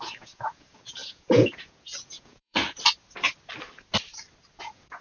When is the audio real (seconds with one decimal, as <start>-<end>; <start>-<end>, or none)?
2.6-4.6